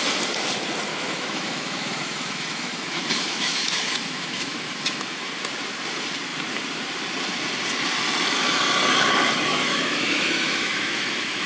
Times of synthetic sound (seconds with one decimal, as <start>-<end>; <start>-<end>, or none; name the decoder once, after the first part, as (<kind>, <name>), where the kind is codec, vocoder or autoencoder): 0.9-5.3 (autoencoder, DAC-VAE); 9.5-11.5